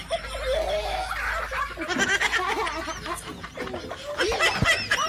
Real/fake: real